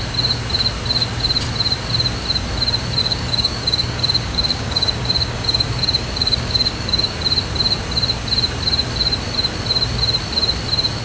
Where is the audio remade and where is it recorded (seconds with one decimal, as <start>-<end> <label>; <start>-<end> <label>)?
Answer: 0.0-3.0 recorded; 3.0-7.0 remade; 7.0-11.0 recorded